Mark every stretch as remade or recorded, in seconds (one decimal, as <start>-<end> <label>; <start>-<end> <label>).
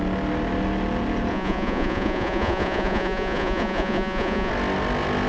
0.0-1.3 recorded; 1.3-4.5 remade; 4.5-5.3 recorded